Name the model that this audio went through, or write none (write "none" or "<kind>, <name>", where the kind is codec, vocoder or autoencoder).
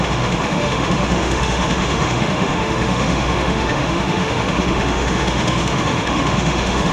autoencoder, DAC-VAE